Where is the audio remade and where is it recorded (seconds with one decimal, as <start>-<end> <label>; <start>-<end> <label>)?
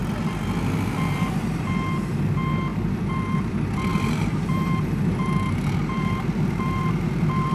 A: 0.0-2.7 recorded; 2.7-3.5 remade; 3.5-3.9 recorded; 3.9-7.5 remade